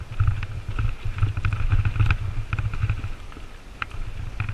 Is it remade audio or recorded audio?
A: recorded